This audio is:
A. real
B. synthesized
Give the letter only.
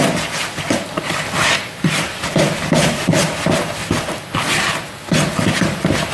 A